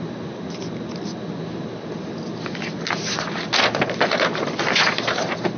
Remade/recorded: recorded